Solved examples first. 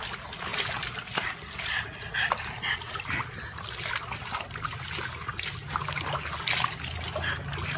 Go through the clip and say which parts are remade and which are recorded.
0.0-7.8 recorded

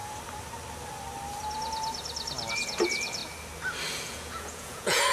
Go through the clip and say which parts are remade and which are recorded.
0.0-2.5 recorded; 2.5-3.2 remade; 3.2-4.0 recorded; 4.0-5.1 remade

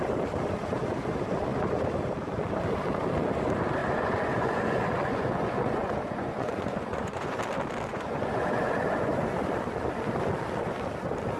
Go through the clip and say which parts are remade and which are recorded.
0.0-3.8 recorded; 3.8-7.4 remade; 7.4-7.9 recorded; 7.9-9.1 remade; 9.1-11.4 recorded

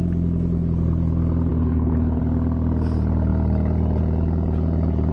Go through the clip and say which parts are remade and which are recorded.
0.0-1.5 recorded; 1.5-2.2 remade; 2.2-5.1 recorded

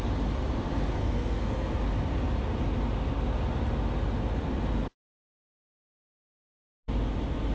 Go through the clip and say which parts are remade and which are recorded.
0.0-1.0 recorded; 1.0-1.8 remade; 1.8-7.5 recorded

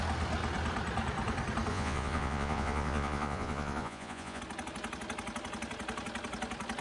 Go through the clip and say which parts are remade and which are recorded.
0.0-1.7 recorded; 1.7-4.4 remade; 4.4-6.8 recorded